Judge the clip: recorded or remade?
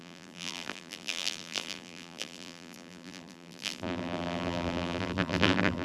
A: remade